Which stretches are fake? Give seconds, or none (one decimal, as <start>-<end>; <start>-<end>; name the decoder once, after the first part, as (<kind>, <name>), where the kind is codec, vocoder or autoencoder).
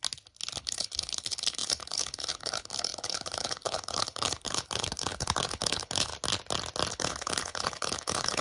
0.6-6.1 (codec, HILCodec); 6.9-8.4